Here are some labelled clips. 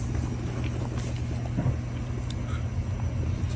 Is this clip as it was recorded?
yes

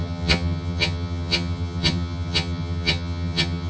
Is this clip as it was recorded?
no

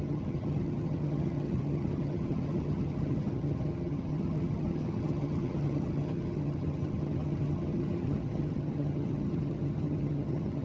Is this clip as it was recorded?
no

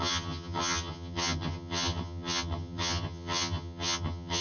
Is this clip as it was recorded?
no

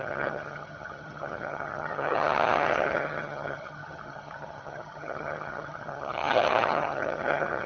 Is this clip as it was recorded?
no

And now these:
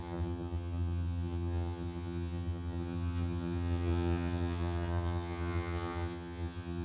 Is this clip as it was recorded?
no